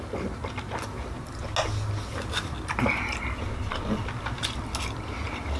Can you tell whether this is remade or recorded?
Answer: recorded